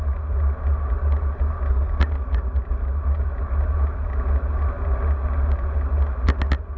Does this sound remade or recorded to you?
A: recorded